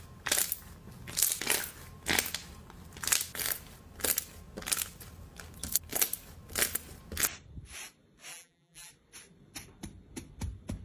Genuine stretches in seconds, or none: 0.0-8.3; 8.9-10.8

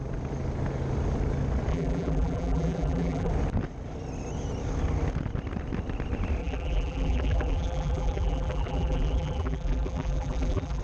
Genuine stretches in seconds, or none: 0.0-1.7; 3.3-6.4

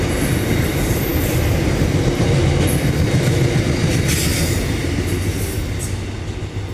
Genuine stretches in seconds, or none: 0.0-6.7

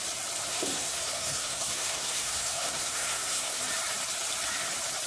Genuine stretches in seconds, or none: 0.0-0.5; 3.6-5.1